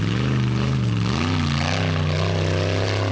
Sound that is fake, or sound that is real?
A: real